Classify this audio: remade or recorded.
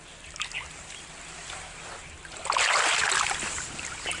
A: recorded